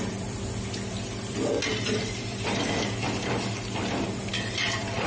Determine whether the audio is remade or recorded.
remade